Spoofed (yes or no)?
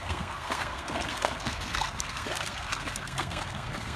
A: yes